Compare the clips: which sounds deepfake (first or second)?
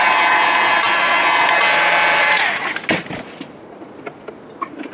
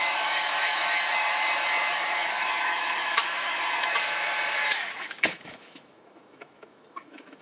second